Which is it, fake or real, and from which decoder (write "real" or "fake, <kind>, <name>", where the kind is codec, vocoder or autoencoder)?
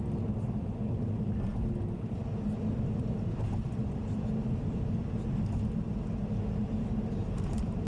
real